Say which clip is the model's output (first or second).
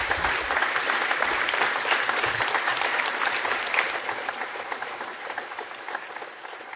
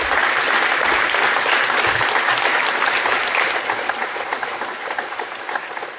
first